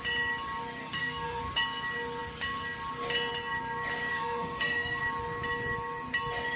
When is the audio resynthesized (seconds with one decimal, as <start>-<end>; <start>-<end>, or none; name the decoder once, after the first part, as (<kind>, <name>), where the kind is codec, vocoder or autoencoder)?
0.8-1.4 (codec, SNAC); 4.1-5.0